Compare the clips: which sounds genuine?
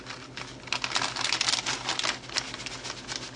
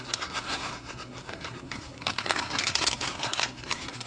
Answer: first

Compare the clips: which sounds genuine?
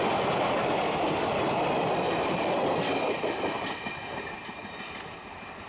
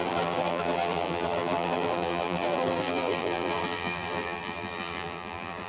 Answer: first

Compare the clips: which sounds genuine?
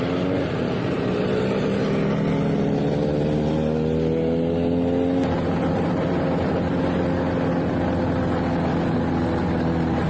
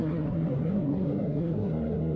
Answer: first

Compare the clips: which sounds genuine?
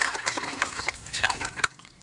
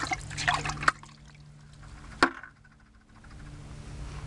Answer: second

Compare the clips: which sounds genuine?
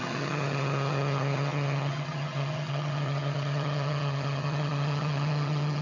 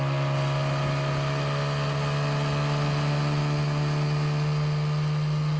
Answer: second